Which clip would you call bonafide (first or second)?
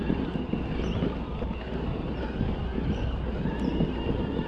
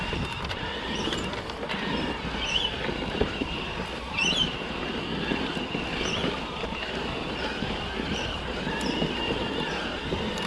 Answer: first